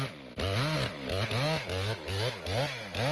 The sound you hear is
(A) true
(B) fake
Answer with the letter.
A